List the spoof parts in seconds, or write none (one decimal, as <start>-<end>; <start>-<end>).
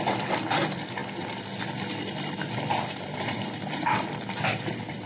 0.0-5.1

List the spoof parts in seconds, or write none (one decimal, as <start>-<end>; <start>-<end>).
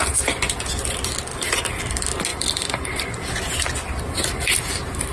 1.3-1.8; 2.3-3.0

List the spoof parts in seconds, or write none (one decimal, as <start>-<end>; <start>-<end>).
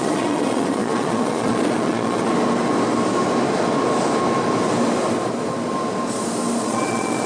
0.0-2.3; 6.6-7.3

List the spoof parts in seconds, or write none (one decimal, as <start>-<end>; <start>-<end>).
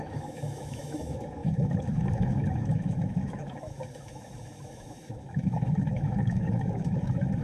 0.0-7.4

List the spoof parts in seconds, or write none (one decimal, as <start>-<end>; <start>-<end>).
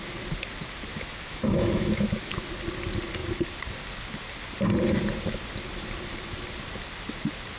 0.9-2.5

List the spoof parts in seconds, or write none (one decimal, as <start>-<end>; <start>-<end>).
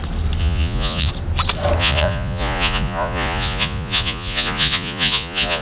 0.4-1.1; 1.8-5.6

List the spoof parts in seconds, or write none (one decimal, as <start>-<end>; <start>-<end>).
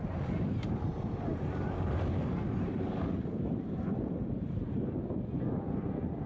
0.0-6.3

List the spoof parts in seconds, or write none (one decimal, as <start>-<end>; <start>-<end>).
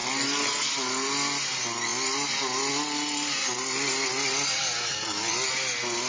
none